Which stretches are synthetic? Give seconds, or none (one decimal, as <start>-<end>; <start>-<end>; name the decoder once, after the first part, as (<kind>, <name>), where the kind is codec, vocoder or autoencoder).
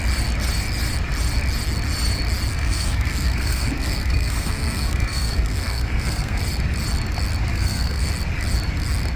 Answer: 2.5-6.4 (codec, SNAC); 7.5-8.1